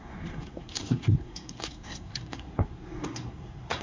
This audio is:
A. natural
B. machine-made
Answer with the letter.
B